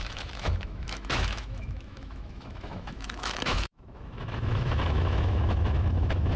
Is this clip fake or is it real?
fake